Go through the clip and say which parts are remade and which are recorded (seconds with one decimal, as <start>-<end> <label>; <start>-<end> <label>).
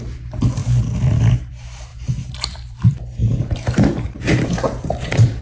0.0-1.9 recorded; 1.9-5.4 remade